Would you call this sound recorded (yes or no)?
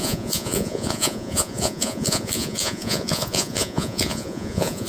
no